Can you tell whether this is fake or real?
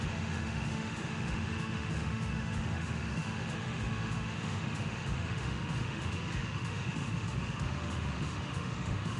fake